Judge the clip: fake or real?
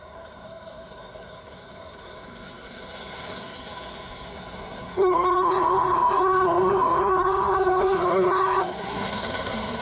fake